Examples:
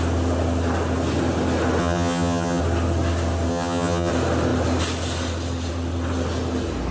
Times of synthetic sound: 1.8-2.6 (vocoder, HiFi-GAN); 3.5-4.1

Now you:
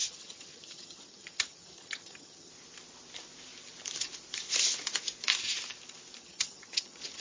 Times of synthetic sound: 0.0-2.5 (vocoder, HiFi-GAN); 6.2-7.2

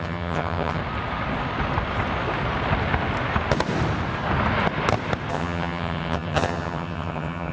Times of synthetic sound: 0.0-0.8 (vocoder, HiFi-GAN); 5.3-7.5